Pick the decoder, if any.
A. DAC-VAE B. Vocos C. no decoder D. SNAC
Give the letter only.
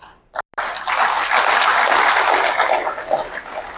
C